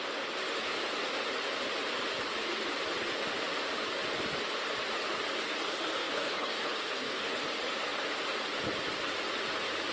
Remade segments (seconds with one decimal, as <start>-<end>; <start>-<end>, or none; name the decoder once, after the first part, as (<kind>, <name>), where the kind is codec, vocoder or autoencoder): 6.0-7.4 (codec, HILCodec)

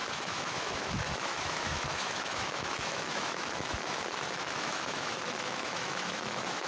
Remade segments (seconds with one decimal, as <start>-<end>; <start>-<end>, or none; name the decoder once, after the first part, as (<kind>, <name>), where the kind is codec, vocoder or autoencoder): 0.0-6.7 (autoencoder, DAC-VAE)

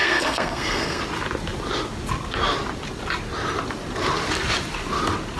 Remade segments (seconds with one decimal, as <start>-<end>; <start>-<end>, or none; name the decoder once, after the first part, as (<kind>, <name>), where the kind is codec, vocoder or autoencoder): 0.0-1.0 (codec, SNAC)

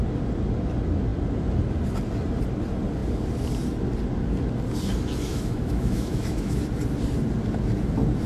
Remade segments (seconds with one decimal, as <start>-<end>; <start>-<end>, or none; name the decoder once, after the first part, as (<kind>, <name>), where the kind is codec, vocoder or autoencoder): 5.3-6.6 (autoencoder, DAC-VAE)

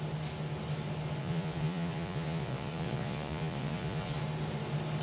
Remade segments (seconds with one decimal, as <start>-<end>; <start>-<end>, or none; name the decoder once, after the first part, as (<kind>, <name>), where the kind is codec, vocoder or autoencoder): 1.2-4.2 (vocoder, Vocos)